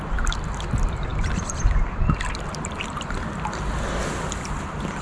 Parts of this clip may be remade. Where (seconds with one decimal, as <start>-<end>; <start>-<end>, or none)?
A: none